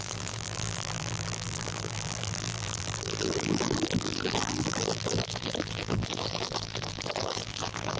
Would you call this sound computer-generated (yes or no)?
yes